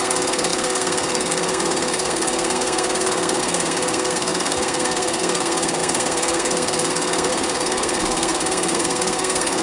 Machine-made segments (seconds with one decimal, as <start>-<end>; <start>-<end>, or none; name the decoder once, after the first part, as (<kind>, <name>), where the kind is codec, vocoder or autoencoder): 0.0-9.6 (codec, SNAC)